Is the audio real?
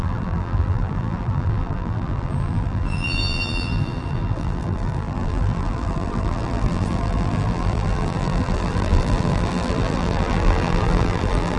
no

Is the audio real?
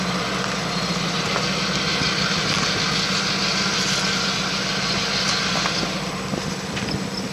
yes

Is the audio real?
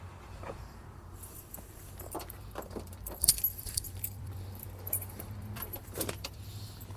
no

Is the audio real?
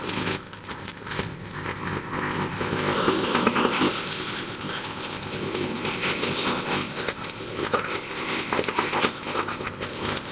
no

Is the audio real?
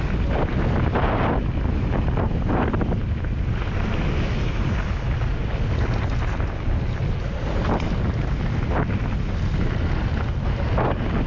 yes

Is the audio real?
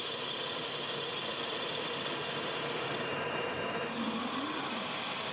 yes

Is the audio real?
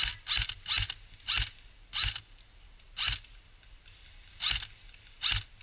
yes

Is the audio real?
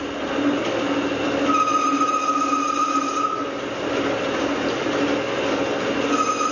yes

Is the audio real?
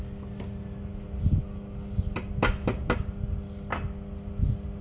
yes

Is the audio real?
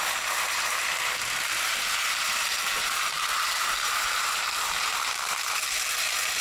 no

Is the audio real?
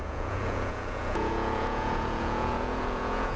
no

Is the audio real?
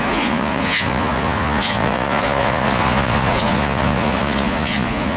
no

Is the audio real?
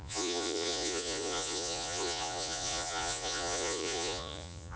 no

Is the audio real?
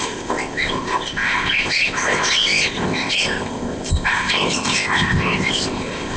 no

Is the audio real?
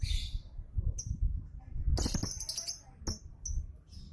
yes